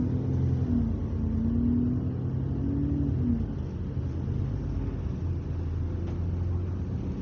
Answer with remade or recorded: recorded